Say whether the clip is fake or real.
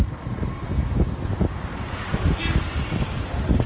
real